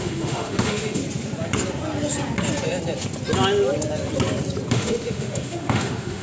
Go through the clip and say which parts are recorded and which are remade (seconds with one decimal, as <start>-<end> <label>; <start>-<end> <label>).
0.0-1.0 remade; 1.0-4.7 recorded; 4.7-6.2 remade